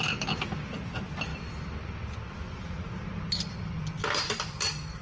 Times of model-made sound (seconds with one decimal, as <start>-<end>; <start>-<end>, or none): none